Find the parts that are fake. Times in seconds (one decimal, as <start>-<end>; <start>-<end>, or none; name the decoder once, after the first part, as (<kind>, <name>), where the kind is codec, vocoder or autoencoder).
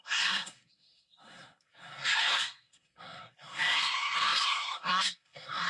0.0-5.7 (codec, SNAC)